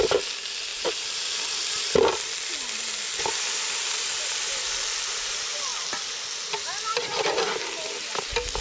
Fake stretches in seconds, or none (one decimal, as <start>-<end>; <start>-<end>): none